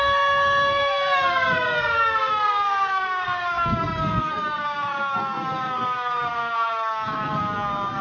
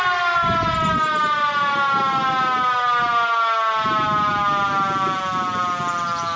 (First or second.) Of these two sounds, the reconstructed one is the first